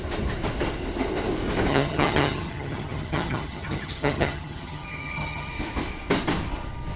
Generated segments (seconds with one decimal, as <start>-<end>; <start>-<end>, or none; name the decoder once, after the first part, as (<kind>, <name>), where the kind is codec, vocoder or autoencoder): 1.7-5.5 (vocoder, HiFi-GAN)